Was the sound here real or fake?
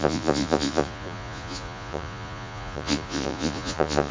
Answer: fake